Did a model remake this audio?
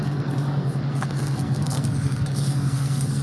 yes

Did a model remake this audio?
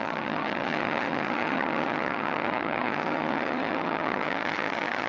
yes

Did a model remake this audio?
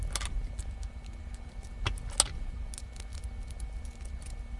no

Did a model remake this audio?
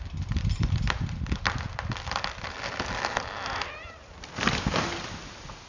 no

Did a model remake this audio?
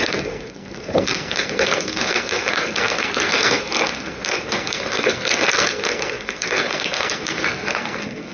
yes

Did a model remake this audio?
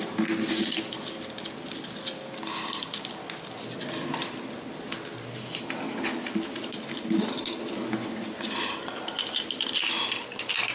no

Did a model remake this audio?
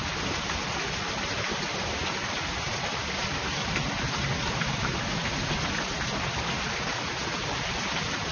no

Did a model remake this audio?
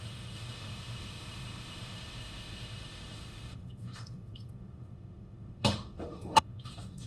yes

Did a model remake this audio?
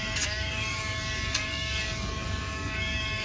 yes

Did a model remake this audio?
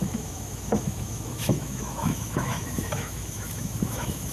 yes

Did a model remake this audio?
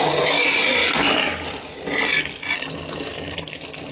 no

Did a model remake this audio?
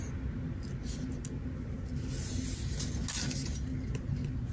no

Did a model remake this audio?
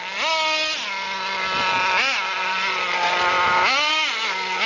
no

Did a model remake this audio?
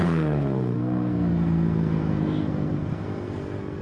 yes